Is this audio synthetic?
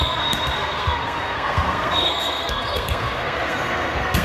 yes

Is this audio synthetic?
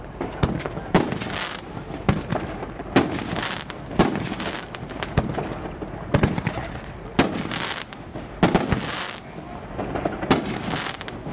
no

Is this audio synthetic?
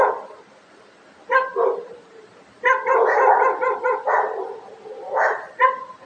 no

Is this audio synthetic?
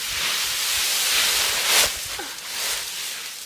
no